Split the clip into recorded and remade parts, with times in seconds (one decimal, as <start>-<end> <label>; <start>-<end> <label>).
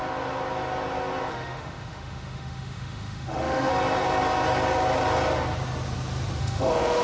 0.0-1.3 recorded; 1.3-3.7 remade; 3.7-6.4 recorded; 6.4-7.0 remade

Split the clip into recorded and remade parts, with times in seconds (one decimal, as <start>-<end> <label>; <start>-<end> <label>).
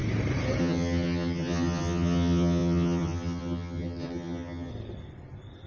0.0-0.6 recorded; 0.6-4.7 remade; 4.7-5.7 recorded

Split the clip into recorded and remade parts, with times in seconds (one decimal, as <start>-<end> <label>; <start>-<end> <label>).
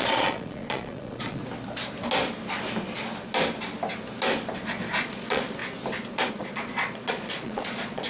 0.0-1.4 remade; 1.4-5.0 recorded; 5.0-5.6 remade; 5.6-6.3 recorded; 6.3-8.1 remade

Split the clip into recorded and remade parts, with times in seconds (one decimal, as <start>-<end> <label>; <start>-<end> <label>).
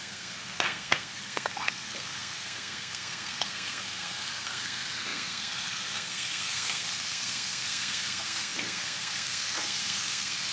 0.0-10.5 remade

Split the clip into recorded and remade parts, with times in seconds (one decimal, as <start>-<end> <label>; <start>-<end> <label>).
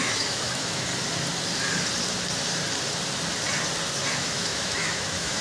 0.0-0.9 remade; 0.9-4.1 recorded; 4.1-5.4 remade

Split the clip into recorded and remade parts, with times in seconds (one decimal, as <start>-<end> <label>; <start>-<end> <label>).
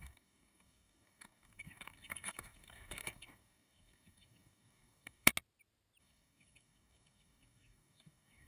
0.0-5.3 remade; 5.3-6.0 recorded; 6.0-8.5 remade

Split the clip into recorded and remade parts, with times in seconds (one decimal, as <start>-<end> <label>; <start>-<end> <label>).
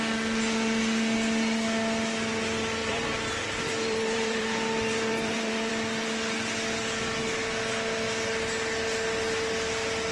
0.0-2.8 recorded; 2.8-5.7 remade; 5.7-10.1 recorded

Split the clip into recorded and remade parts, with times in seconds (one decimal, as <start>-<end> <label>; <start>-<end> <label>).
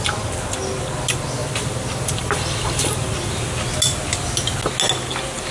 0.0-1.4 recorded; 1.4-3.3 remade; 3.3-5.5 recorded